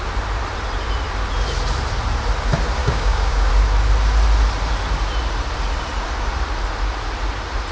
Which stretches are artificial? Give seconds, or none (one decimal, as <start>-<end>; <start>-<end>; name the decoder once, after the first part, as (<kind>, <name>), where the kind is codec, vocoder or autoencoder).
2.8-3.5 (codec, DAC)